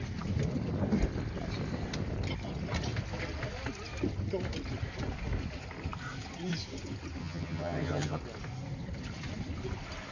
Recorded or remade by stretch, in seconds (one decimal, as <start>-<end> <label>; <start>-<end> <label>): 0.0-7.2 recorded; 7.2-8.2 remade; 8.2-10.1 recorded